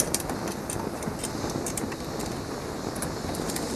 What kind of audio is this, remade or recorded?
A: remade